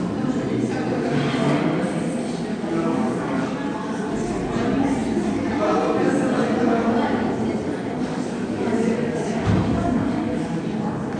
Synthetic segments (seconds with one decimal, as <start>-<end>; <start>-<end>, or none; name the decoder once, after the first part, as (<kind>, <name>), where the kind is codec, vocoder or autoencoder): 2.5-3.5 (codec, DAC); 8.1-10.4